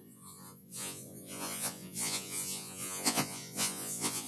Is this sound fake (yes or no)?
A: yes